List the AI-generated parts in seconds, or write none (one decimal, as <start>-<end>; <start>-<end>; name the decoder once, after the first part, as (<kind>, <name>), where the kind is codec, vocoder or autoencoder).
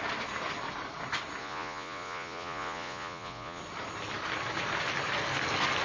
1.4-3.6 (vocoder, Vocos)